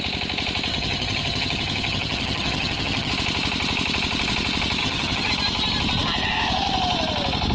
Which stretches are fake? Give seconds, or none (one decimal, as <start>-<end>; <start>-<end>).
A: 0.7-3.1; 4.8-5.3